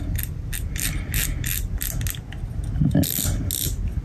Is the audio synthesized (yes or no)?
no